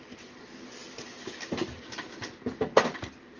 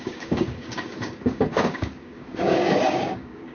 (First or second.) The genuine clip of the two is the first